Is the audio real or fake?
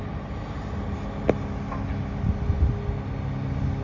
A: real